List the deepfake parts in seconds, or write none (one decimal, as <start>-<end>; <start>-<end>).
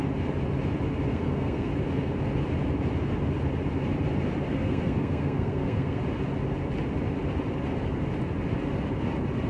1.1-1.7; 4.5-6.0